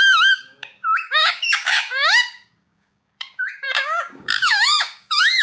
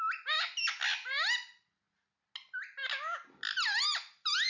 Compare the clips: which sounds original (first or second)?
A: second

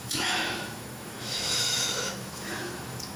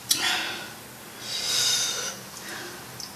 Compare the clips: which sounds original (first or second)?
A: second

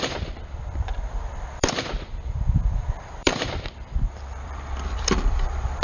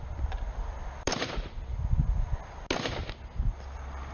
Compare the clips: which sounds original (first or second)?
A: second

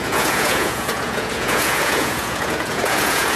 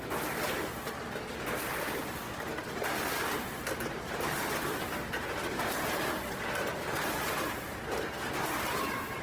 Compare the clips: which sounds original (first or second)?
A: second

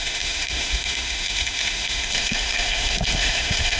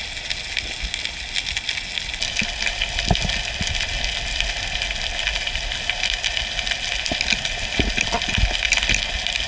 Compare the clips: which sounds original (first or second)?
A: second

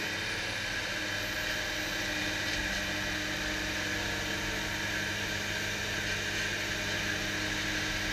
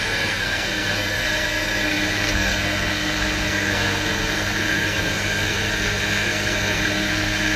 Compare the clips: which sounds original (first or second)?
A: first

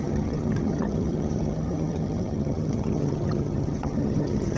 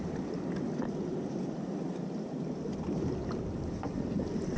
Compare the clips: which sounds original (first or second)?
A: second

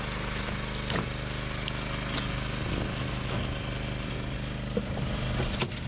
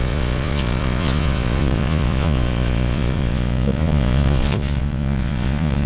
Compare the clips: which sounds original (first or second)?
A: first